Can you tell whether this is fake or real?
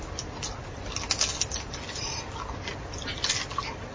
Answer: real